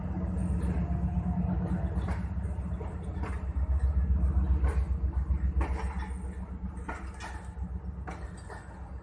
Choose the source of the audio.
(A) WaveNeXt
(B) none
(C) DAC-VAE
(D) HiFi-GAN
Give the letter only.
B